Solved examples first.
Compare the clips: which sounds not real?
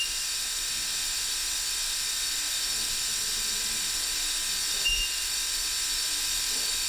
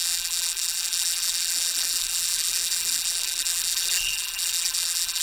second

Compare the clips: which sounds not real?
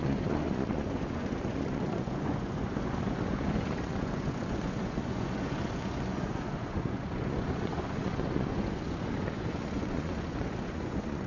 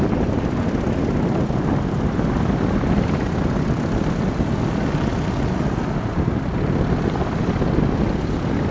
first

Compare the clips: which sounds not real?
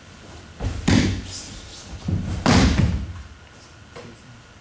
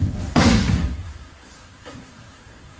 second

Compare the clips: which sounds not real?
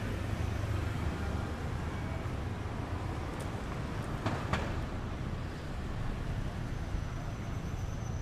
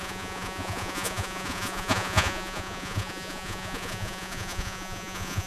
second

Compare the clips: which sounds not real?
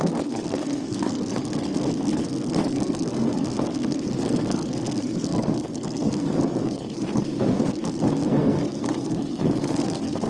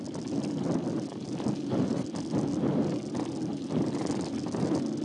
first